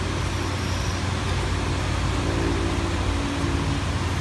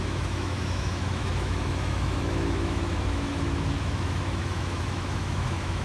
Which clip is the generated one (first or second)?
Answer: second